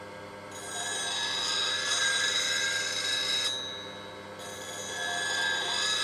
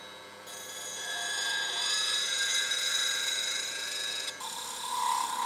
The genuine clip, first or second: first